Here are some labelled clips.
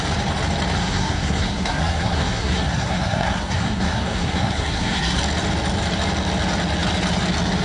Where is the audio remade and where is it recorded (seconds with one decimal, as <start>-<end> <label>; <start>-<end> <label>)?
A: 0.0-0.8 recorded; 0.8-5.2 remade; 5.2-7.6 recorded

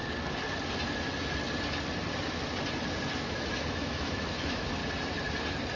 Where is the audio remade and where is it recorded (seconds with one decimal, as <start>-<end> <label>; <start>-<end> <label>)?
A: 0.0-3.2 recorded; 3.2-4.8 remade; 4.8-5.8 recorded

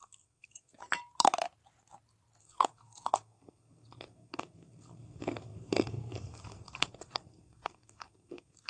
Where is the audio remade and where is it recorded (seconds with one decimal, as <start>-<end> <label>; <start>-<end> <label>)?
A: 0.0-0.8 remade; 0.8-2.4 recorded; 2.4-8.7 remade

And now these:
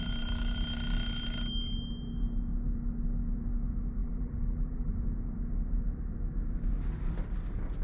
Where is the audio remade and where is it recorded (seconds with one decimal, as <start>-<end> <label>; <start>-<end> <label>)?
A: 0.0-4.0 recorded; 4.0-4.9 remade; 4.9-7.8 recorded